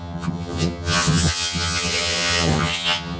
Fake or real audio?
fake